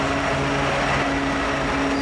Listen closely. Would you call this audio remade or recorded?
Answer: recorded